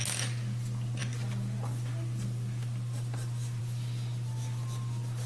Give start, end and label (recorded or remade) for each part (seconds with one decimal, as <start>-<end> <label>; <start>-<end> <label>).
0.0-5.3 recorded